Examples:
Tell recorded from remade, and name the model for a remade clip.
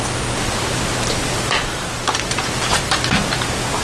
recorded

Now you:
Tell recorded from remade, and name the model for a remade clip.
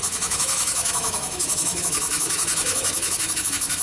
remade, autoencoder, DAC-VAE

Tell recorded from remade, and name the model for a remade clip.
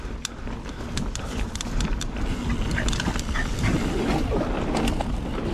recorded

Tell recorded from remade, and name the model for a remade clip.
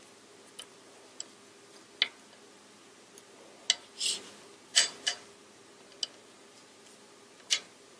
recorded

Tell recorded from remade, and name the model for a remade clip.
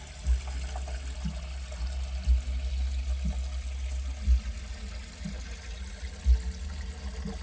recorded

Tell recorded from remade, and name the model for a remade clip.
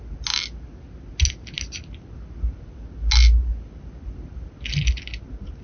recorded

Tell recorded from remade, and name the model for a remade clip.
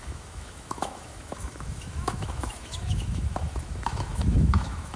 remade, autoencoder, DAC-VAE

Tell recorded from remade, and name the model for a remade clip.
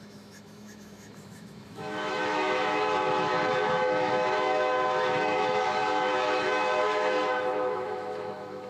remade, autoencoder, DAC-VAE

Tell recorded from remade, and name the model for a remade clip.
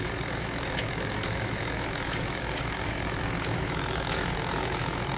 remade, autoencoder, DAC-VAE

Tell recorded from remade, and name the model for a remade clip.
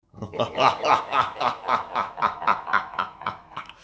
remade, autoencoder, DAC-VAE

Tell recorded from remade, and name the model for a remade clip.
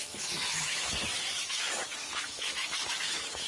remade, autoencoder, DAC-VAE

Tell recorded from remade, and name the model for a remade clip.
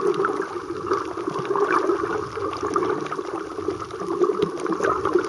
recorded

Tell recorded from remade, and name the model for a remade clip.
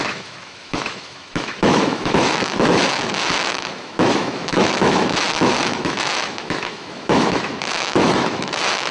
remade, autoencoder, DAC-VAE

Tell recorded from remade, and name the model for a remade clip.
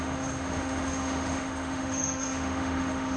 remade, autoencoder, DAC-VAE